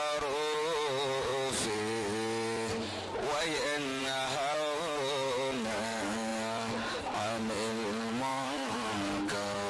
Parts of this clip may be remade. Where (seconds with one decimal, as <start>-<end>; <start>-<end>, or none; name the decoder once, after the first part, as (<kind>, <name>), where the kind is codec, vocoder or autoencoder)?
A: 8.3-8.9 (autoencoder, DAC-VAE)